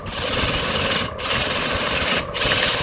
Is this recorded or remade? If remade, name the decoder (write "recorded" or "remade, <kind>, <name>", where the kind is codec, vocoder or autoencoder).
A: recorded